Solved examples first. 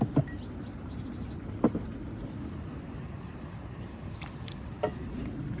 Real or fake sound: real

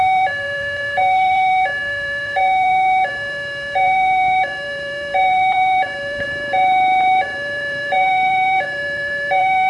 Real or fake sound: fake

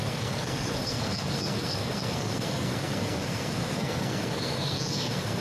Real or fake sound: fake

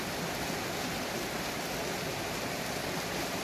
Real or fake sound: real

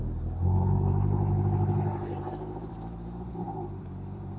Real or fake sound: fake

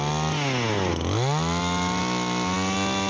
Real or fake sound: real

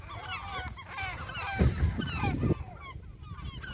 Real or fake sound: real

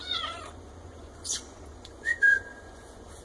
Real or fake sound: fake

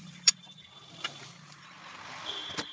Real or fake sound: fake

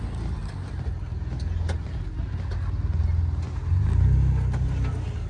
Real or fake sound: real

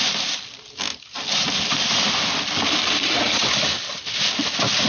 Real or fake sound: real